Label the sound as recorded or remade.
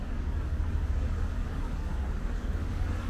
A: remade